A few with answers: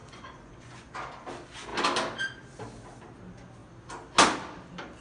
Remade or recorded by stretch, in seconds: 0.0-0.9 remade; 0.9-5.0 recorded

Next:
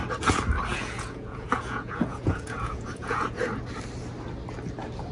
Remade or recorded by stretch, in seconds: 0.0-0.7 recorded; 0.7-3.4 remade; 3.4-5.1 recorded

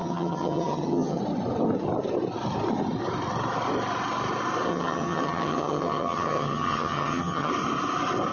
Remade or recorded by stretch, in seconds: 0.0-1.2 remade; 1.2-4.7 recorded; 4.7-7.5 remade; 7.5-8.3 recorded

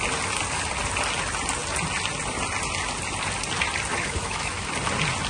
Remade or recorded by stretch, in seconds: 0.0-3.9 recorded; 3.9-4.7 remade; 4.7-5.3 recorded

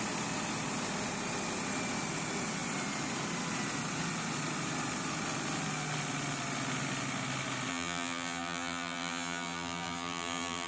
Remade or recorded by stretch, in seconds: 0.0-7.7 recorded; 7.7-10.7 remade